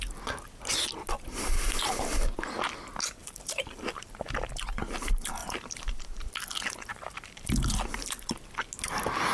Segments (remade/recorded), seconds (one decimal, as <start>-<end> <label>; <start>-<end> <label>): 0.0-3.2 recorded; 3.2-4.5 remade; 4.5-5.4 recorded; 5.4-6.3 remade; 6.3-6.9 recorded; 6.9-7.7 remade; 7.7-9.3 recorded